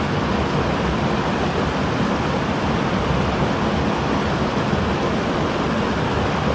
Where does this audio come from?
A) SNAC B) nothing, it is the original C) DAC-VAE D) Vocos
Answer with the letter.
B